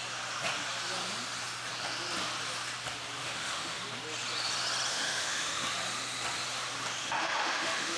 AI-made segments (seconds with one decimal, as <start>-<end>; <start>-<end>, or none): 3.2-3.8; 4.9-5.6; 7.0-8.0